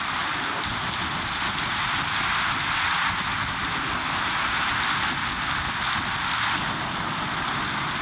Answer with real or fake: real